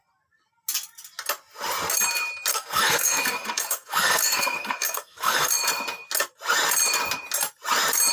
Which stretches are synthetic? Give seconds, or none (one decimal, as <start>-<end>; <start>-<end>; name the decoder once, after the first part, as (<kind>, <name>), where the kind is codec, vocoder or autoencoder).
2.5-5.5 (codec, SNAC)